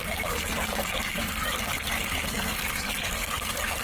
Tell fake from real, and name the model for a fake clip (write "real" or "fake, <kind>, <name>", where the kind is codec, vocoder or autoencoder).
fake, codec, SNAC